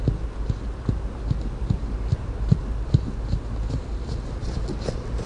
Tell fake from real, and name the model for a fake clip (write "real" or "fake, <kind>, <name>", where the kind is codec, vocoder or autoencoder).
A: real